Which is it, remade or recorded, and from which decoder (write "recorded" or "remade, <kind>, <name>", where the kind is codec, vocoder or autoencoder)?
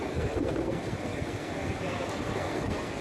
remade, codec, SNAC